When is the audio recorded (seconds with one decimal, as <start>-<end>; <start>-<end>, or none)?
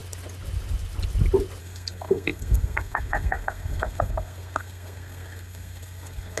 0.0-1.6